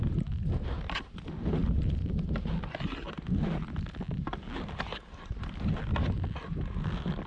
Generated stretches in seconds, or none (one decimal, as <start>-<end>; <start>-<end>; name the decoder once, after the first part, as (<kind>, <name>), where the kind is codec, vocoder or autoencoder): none